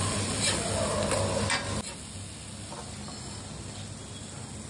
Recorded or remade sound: recorded